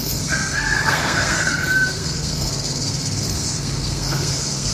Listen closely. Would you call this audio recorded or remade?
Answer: remade